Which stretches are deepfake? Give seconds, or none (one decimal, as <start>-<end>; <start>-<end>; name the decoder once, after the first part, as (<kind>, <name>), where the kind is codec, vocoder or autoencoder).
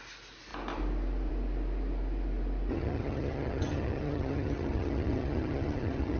2.7-6.2 (vocoder, HiFi-GAN)